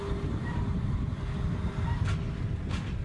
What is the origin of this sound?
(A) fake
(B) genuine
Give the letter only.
B